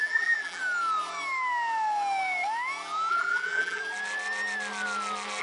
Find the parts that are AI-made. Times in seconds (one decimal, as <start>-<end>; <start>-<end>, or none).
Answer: 0.0-0.6; 3.1-3.8